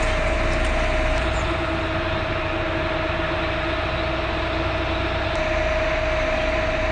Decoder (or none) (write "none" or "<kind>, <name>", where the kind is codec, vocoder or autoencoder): none